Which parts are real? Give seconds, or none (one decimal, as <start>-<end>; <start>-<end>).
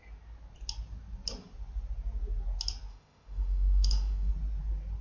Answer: 0.0-2.9; 4.3-5.0